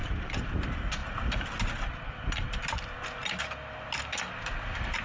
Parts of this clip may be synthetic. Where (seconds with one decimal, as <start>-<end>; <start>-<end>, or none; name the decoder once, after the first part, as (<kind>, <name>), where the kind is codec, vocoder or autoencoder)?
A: 0.0-0.5 (vocoder, BigVGAN v2)